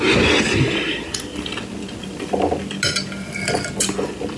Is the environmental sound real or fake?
real